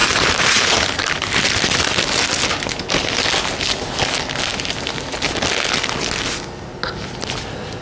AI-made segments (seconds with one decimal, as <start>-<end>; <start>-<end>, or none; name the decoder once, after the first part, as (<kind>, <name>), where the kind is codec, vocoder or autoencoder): 0.0-1.6 (vocoder, BigVGAN v2)